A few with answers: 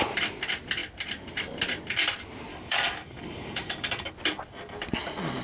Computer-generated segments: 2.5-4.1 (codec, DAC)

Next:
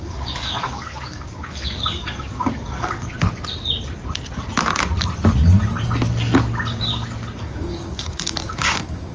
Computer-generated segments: 0.0-3.1 (codec, DAC); 7.4-9.1

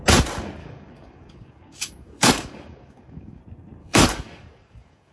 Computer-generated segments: 0.6-3.4 (codec, DAC); 3.8-5.1

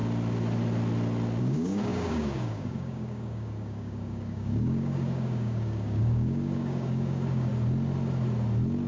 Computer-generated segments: 1.4-7.5 (codec, DAC)

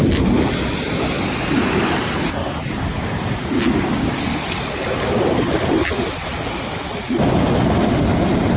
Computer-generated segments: 2.4-4.1 (codec, DAC)

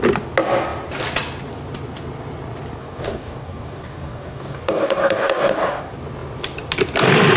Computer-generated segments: 2.8-5.8 (codec, DAC)

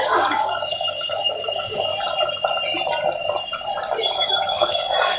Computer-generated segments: 0.0-1.9 (codec, DAC); 4.0-5.2

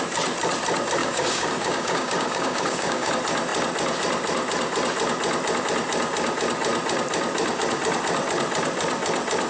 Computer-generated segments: 1.0-3.1 (codec, DAC)